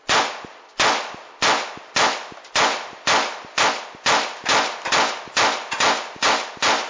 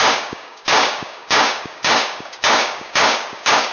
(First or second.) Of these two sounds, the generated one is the second